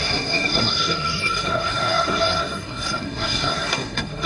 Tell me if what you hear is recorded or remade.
remade